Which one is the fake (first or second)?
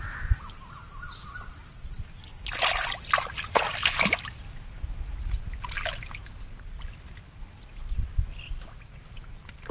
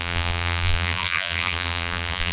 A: second